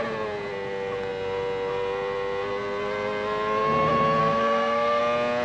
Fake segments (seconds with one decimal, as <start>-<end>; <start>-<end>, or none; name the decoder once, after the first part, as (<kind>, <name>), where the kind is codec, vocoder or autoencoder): 4.2-5.0 (codec, SNAC)